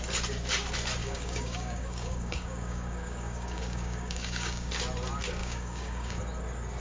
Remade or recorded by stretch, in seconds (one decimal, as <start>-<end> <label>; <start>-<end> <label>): 0.0-1.0 recorded; 1.0-4.7 remade; 4.7-5.4 recorded; 5.4-6.2 remade; 6.2-6.8 recorded